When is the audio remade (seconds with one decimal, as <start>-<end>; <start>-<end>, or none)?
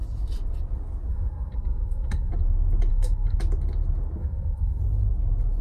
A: 1.1-2.3; 2.9-3.4; 4.2-4.8